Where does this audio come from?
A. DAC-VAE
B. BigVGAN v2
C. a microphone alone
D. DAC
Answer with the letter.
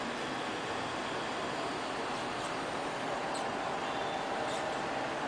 C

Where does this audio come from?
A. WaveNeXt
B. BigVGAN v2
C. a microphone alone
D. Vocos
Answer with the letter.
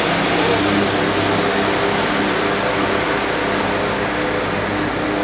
C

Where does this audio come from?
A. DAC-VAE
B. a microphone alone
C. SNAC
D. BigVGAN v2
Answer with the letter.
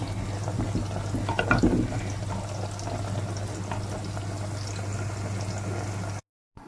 B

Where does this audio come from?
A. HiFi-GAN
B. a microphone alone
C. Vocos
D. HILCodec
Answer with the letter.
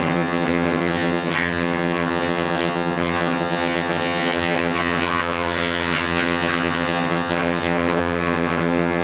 A